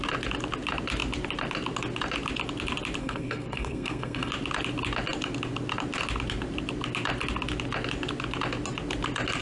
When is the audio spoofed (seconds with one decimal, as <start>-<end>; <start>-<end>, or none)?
3.0-4.3